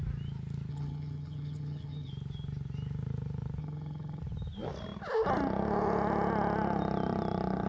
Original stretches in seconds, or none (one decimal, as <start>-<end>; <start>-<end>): 0.0-0.7; 2.1-3.6; 4.2-7.7